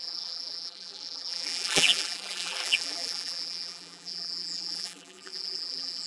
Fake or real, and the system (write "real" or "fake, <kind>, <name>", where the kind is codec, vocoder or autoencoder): fake, vocoder, BigVGAN v2